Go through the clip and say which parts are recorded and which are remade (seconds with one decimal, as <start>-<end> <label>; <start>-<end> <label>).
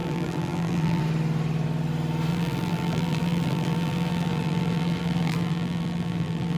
0.0-1.0 remade; 1.0-2.3 recorded; 2.3-6.6 remade